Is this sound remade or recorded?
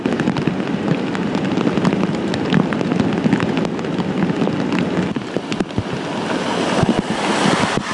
recorded